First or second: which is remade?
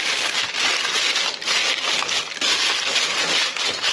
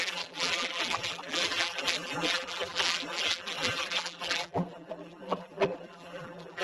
second